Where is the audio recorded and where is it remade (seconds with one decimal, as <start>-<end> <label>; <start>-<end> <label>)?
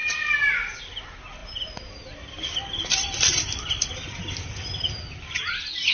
0.0-1.4 recorded; 1.4-4.9 remade; 4.9-5.9 recorded